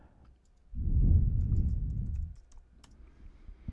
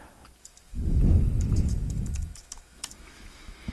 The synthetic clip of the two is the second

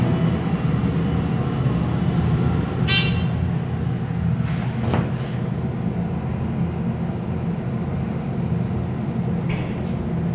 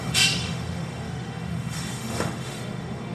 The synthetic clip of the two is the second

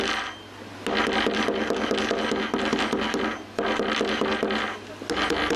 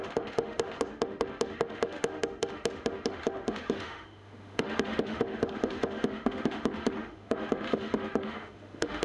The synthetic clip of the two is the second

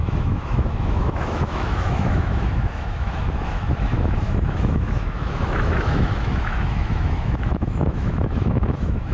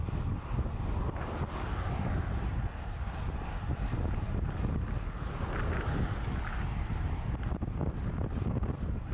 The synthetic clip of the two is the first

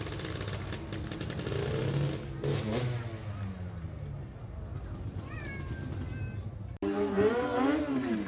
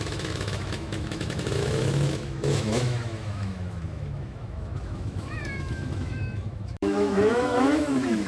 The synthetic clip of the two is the second